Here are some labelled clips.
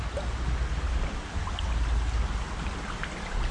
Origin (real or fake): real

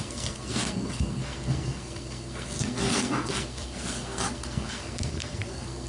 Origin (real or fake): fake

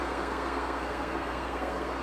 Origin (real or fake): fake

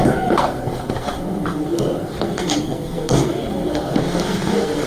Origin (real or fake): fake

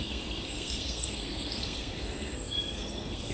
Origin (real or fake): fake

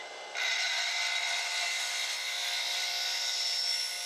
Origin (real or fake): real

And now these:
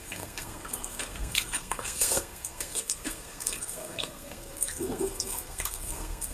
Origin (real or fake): fake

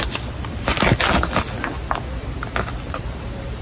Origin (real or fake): real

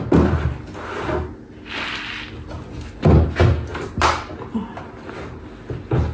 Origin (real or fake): real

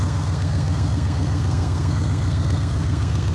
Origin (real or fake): fake